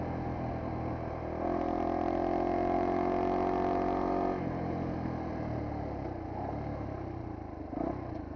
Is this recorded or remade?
recorded